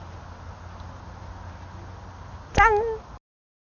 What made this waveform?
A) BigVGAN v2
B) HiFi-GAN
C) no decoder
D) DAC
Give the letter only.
C